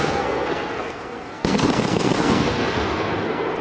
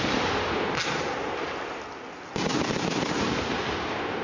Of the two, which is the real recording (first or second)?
second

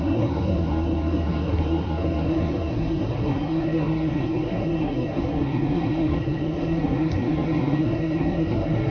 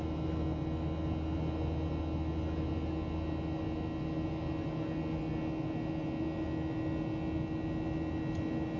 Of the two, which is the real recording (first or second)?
second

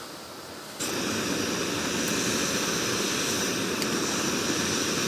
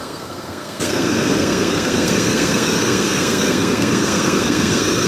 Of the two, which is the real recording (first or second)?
first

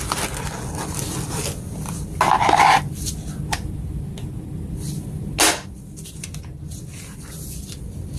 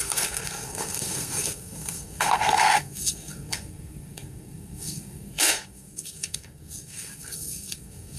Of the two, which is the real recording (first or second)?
first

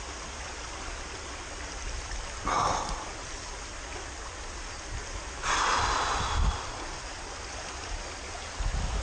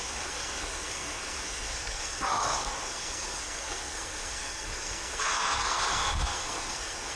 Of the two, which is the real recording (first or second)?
first